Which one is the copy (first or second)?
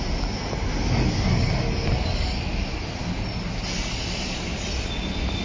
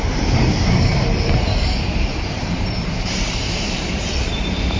second